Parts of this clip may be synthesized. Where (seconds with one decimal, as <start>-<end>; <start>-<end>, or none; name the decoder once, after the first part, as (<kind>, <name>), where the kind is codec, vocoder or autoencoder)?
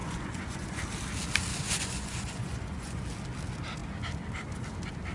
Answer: 0.0-0.8 (vocoder, Vocos); 1.5-3.0